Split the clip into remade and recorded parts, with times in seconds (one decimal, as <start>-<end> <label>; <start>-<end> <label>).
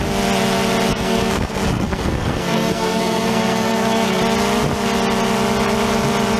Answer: 0.0-0.9 recorded; 0.9-4.2 remade; 4.2-6.4 recorded